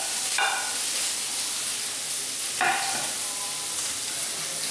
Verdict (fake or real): real